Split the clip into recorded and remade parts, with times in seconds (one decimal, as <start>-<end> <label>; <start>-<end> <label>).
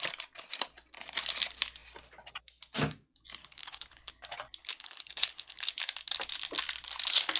0.0-3.4 recorded; 3.4-4.1 remade; 4.1-4.6 recorded; 4.6-5.7 remade; 5.7-7.4 recorded